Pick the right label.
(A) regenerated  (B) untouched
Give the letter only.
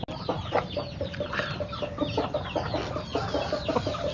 B